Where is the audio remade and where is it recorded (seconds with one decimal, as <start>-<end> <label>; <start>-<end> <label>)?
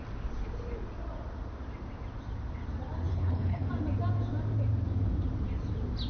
0.0-3.1 recorded; 3.1-3.7 remade; 3.7-6.1 recorded